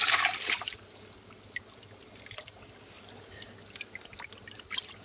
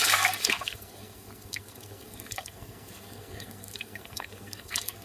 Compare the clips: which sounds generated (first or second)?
second